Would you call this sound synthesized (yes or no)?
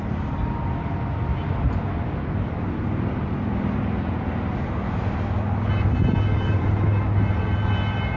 no